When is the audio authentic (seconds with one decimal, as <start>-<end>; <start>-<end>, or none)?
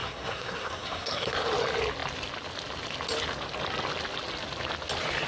1.3-5.3